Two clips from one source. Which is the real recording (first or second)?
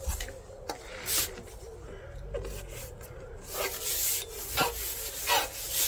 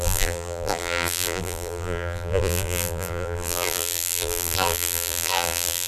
first